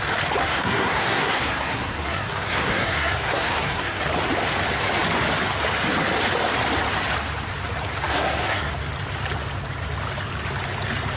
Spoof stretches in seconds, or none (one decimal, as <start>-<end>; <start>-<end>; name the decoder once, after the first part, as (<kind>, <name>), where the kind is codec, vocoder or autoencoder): 0.4-4.0 (codec, SNAC); 8.1-8.7